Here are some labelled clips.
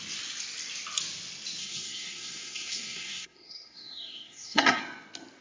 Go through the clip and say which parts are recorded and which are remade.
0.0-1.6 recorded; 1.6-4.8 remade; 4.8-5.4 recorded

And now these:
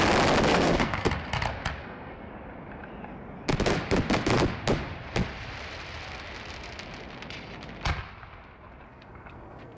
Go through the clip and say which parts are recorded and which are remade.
0.0-0.5 recorded; 0.5-1.1 remade; 1.1-1.8 recorded; 1.8-2.3 remade; 2.3-8.9 recorded; 8.9-9.8 remade

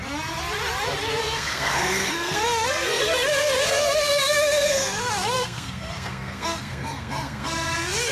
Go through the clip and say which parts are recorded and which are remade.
0.0-1.2 recorded; 1.2-8.1 remade

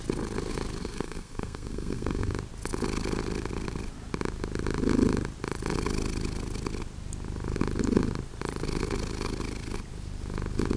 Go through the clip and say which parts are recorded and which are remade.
0.0-0.8 recorded; 0.8-2.3 remade; 2.3-10.8 recorded

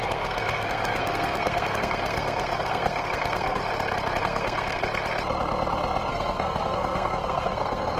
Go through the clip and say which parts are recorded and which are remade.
0.0-3.6 remade; 3.6-4.2 recorded; 4.2-4.8 remade; 4.8-6.1 recorded; 6.1-8.0 remade

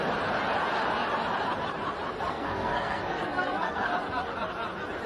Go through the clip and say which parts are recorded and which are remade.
0.0-2.3 recorded; 2.3-3.9 remade; 3.9-5.1 recorded

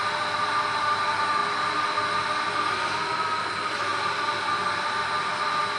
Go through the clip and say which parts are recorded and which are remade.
0.0-5.8 recorded

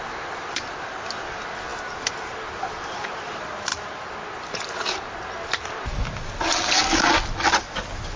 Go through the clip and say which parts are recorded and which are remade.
0.0-8.2 recorded